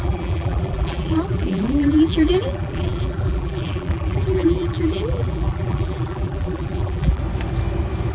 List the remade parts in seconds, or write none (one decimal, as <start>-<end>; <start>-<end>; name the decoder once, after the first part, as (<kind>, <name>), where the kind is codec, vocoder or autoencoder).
0.0-7.2 (vocoder, BigVGAN v2)